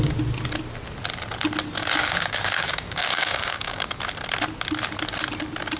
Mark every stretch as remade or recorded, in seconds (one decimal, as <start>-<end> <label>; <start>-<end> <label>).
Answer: 0.0-2.0 recorded; 2.0-4.0 remade; 4.0-5.8 recorded